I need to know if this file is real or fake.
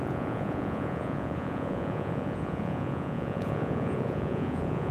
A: fake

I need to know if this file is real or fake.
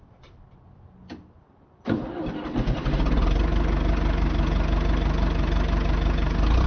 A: real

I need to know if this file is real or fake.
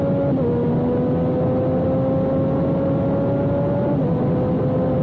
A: real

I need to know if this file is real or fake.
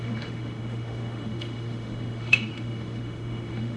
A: fake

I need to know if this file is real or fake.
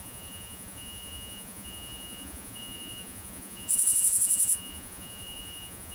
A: fake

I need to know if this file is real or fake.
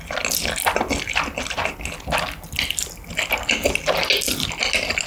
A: real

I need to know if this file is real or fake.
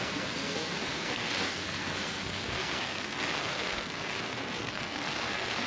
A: fake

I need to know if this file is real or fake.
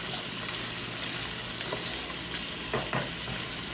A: real